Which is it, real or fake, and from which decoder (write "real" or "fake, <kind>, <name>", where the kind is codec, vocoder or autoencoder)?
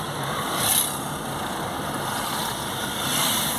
real